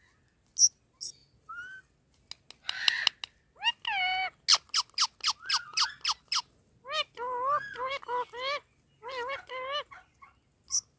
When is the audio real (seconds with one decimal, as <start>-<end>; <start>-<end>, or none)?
0.0-11.0